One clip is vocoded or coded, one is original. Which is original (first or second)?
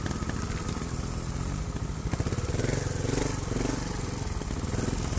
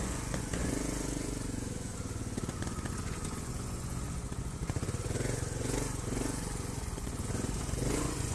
first